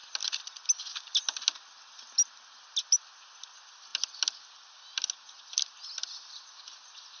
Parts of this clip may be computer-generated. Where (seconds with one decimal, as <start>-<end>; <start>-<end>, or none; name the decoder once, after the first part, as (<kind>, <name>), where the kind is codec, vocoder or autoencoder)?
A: none